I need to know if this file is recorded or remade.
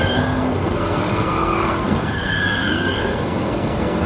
remade